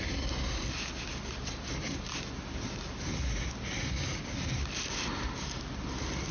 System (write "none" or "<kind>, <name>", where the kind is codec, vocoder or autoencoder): none